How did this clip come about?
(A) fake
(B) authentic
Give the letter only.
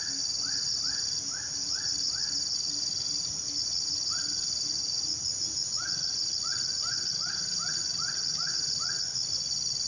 B